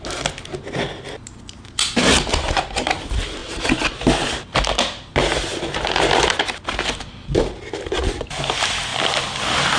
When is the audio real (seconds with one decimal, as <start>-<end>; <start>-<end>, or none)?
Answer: 0.0-3.4; 4.0-5.5; 7.6-9.8